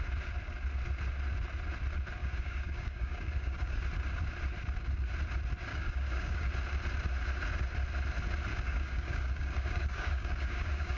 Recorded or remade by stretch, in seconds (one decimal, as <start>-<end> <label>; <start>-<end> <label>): 0.0-2.2 recorded; 2.2-3.8 remade; 3.8-5.7 recorded; 5.7-6.5 remade; 6.5-8.5 recorded; 8.5-11.0 remade